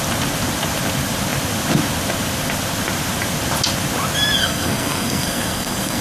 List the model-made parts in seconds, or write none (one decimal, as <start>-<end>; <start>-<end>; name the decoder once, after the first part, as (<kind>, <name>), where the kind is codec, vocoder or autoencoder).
4.4-6.0 (codec, SNAC)